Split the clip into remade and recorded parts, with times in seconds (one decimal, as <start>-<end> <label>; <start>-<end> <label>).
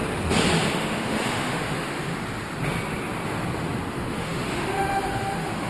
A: 0.0-0.7 recorded; 0.7-2.1 remade; 2.1-3.9 recorded; 3.9-5.7 remade